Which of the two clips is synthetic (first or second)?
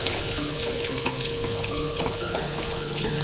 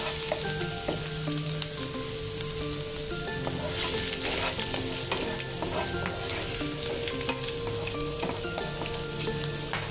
first